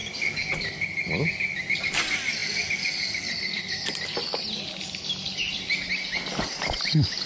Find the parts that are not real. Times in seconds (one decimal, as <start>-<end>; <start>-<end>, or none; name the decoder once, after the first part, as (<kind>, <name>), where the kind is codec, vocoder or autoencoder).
none